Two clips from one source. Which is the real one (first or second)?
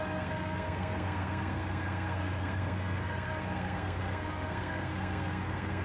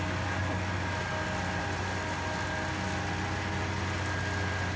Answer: second